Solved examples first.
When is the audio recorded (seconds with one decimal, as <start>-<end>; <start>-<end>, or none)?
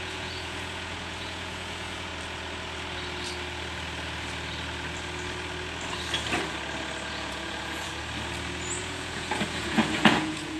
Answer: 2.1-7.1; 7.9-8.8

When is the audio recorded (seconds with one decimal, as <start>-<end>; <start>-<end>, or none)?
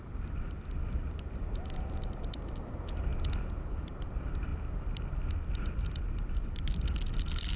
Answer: 0.0-7.6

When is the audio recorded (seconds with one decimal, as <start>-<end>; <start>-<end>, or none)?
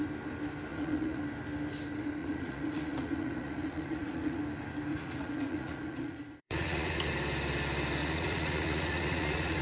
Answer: 0.0-0.7; 1.2-2.2; 4.4-4.9; 7.1-8.0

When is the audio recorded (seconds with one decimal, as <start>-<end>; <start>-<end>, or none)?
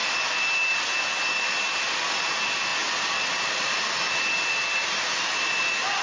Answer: 0.0-6.0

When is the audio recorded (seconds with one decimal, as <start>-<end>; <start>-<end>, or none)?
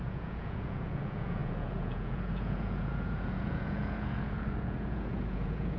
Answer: none